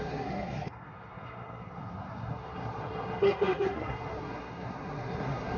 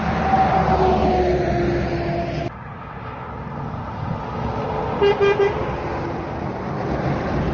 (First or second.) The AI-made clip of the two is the first